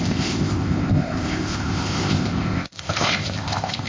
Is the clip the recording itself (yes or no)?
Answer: no